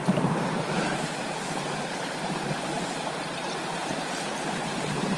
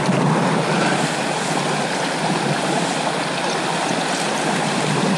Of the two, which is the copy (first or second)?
first